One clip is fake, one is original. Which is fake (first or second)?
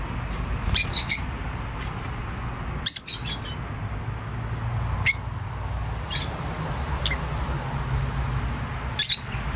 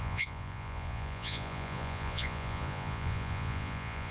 second